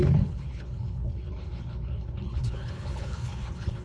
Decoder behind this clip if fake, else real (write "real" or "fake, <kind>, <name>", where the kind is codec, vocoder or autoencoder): fake, codec, HILCodec